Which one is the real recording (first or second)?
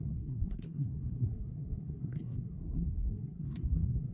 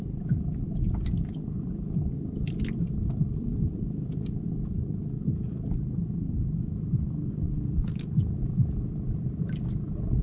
second